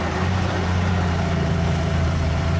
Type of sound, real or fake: fake